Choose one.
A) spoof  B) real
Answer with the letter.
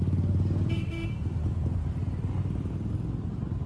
B